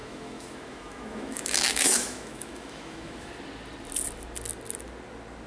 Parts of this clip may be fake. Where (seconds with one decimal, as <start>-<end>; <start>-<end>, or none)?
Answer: 0.0-3.3